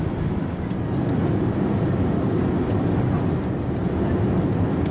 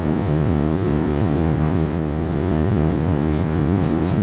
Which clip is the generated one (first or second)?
second